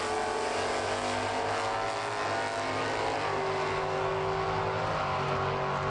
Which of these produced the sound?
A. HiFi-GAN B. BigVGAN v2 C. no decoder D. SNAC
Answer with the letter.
C